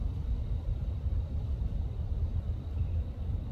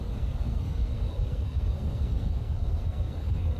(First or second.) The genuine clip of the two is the first